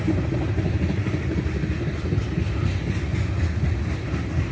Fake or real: real